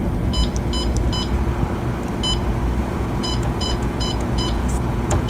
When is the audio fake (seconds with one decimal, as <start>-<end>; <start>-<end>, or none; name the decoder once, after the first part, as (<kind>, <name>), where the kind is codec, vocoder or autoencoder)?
2.8-5.3 (vocoder, Vocos)